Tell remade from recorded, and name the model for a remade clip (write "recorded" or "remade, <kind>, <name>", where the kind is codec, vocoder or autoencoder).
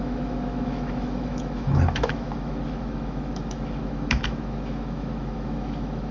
remade, autoencoder, DAC-VAE